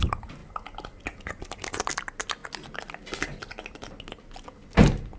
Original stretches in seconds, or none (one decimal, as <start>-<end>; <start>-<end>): 0.0-5.2